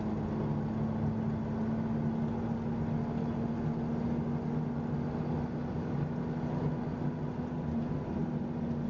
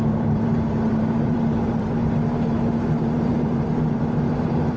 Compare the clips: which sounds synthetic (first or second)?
second